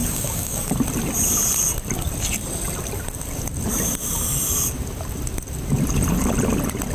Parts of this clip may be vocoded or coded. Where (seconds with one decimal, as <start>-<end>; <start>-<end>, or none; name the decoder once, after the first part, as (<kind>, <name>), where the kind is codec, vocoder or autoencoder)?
0.0-0.7 (codec, DAC)